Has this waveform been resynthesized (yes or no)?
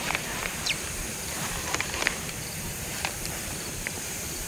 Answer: yes